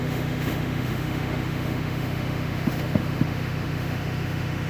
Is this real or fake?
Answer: fake